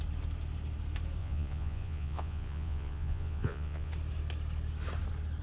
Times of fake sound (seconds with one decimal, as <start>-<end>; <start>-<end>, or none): 1.2-3.9